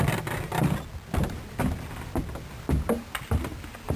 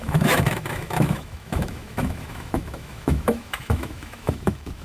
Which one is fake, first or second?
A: second